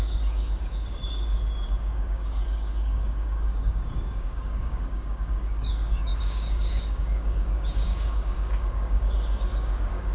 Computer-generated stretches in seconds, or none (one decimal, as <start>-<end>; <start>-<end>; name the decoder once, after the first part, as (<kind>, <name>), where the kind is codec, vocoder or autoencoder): 0.0-10.1 (codec, DAC)